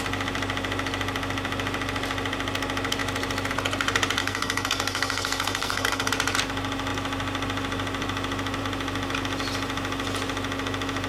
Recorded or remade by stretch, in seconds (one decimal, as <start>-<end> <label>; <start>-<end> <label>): 0.0-4.2 recorded; 4.2-6.1 remade; 6.1-11.1 recorded